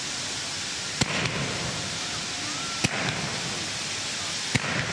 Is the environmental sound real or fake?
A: real